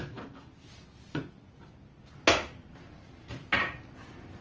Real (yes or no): yes